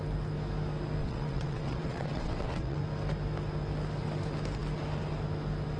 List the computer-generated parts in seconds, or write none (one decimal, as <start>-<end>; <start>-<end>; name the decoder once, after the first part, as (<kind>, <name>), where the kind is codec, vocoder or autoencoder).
1.0-2.8 (vocoder, WaveNeXt)